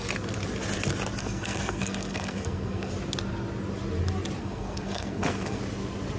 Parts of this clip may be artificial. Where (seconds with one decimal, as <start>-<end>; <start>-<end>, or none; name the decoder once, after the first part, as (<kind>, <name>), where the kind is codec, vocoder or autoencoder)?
1.2-2.9 (codec, SNAC); 4.4-5.6